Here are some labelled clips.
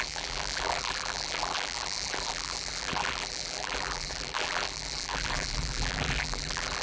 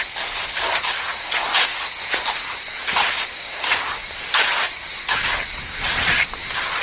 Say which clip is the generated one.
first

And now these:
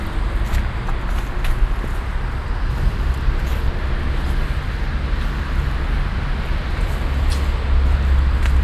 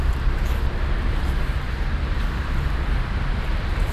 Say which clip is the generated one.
second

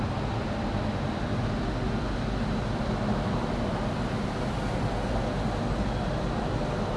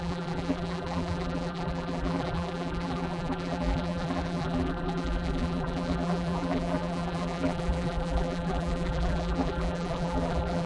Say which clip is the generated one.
second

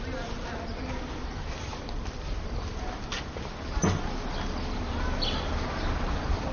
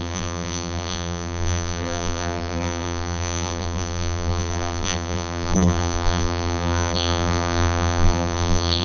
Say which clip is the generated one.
second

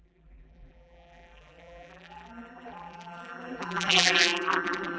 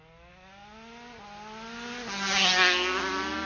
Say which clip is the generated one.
first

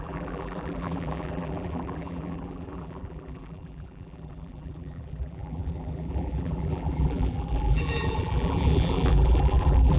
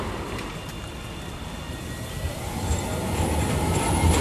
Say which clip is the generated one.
first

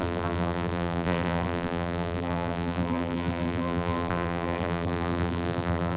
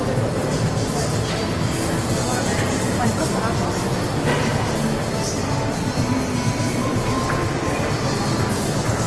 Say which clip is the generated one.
first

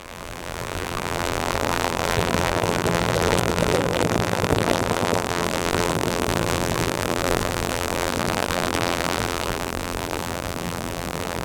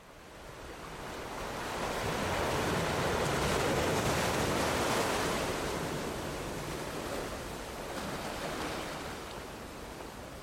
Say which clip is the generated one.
first